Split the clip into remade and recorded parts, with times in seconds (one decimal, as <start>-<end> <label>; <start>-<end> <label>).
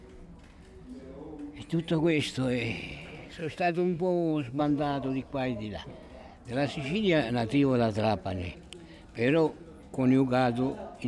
0.0-3.4 recorded; 3.4-4.6 remade; 4.6-11.1 recorded